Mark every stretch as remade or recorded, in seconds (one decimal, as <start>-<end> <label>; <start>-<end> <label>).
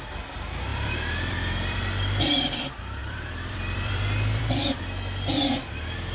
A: 0.0-0.7 recorded; 0.7-2.6 remade; 2.6-3.0 recorded; 3.0-4.7 remade; 4.7-6.1 recorded